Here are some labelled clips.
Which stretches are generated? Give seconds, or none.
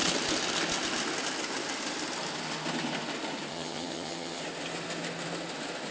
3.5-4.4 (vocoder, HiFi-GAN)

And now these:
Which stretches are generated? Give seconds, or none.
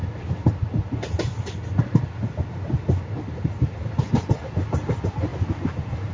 5.3-6.1 (vocoder, BigVGAN v2)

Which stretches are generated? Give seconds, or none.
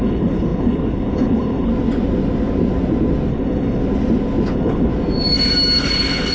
0.0-1.7 (codec, HILCodec); 3.3-3.8; 4.5-4.9; 5.8-6.3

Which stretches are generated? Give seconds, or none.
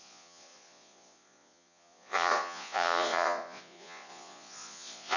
0.0-5.2 (vocoder, Vocos)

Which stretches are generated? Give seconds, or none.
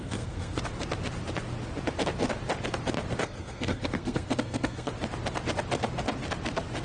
0.0-0.6 (codec, SNAC); 3.2-4.9